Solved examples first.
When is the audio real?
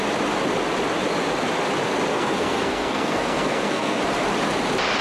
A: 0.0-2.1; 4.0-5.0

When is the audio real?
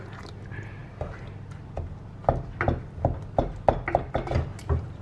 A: 0.0-5.0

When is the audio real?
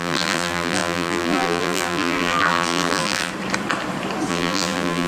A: 3.3-4.3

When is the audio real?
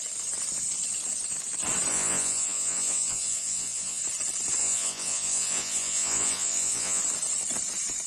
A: 0.0-1.9; 4.0-4.6; 7.0-8.1